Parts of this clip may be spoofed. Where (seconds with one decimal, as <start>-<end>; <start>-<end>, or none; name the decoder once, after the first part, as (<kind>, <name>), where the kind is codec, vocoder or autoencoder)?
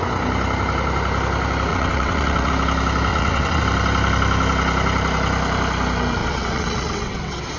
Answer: 1.7-2.5 (vocoder, WaveNeXt); 3.1-3.6; 6.2-7.6